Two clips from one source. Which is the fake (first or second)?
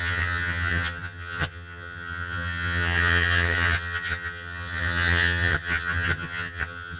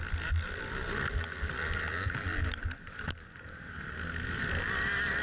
first